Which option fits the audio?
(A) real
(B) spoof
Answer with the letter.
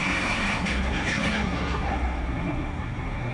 B